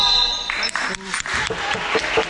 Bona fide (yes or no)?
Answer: yes